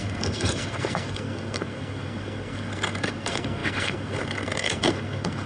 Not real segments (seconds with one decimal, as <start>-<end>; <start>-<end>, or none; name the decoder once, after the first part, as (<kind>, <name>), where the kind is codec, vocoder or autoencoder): 0.0-5.5 (codec, SNAC)